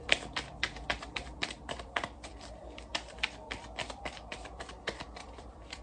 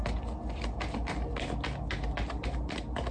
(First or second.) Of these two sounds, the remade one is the first